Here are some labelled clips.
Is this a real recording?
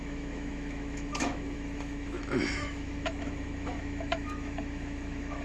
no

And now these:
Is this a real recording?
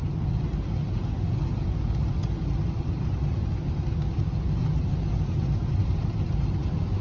yes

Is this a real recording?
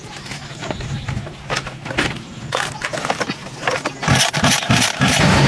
yes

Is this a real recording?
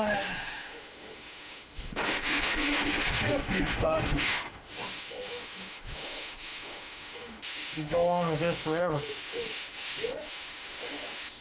no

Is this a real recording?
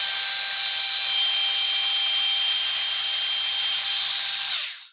yes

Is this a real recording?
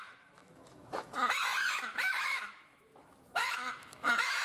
no